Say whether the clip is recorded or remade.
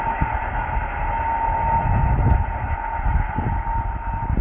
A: recorded